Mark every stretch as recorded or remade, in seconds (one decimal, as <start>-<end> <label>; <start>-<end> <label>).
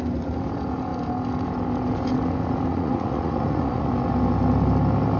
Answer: 0.0-2.7 recorded; 2.7-3.9 remade; 3.9-5.2 recorded